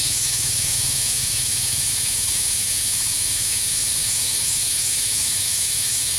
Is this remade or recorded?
remade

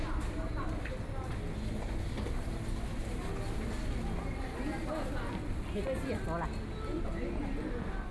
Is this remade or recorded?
recorded